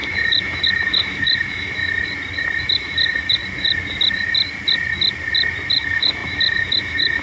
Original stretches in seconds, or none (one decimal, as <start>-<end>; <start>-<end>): 1.8-2.6; 3.4-5.7